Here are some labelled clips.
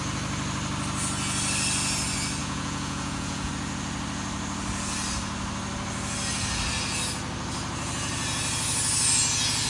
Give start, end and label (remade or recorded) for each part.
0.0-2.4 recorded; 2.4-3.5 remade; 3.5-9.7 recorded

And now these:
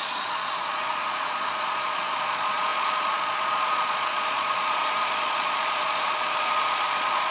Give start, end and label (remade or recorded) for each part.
0.0-7.3 remade

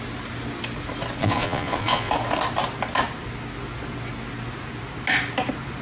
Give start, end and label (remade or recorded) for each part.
0.0-1.2 recorded; 1.2-2.1 remade; 2.1-5.8 recorded

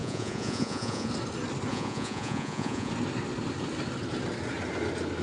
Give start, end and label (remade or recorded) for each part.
0.0-1.1 remade; 1.1-1.7 recorded; 1.7-2.9 remade; 2.9-5.2 recorded